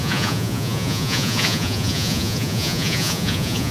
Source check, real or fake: fake